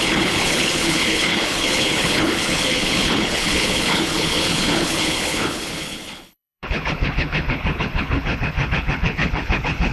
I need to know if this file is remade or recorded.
remade